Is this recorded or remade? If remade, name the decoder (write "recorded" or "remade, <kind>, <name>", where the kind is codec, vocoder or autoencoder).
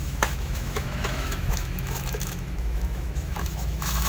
remade, autoencoder, DAC-VAE